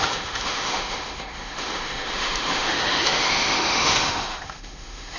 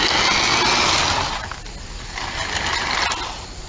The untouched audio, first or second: second